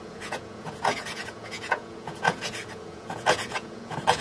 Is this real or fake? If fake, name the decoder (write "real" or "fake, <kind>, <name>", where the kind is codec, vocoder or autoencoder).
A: fake, vocoder, Vocos